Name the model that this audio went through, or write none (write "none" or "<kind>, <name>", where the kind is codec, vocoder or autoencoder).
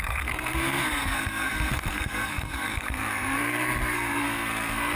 codec, SNAC